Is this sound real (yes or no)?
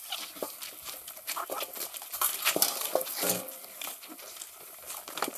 yes